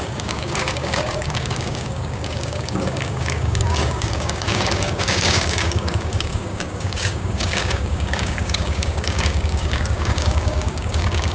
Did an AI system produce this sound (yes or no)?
yes